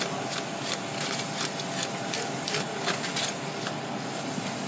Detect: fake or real real